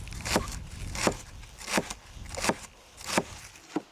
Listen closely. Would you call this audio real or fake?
real